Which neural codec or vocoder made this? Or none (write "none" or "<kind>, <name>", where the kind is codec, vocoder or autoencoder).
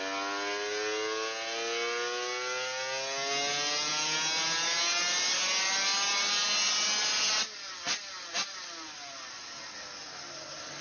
none